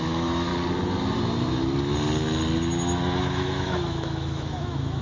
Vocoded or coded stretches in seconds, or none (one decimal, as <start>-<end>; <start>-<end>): 0.0-0.5; 3.2-5.0